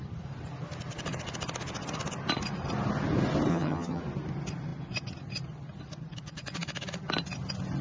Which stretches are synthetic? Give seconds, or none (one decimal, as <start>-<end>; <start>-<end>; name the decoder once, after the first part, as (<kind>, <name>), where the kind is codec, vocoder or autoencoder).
3.5-4.0 (vocoder, HiFi-GAN)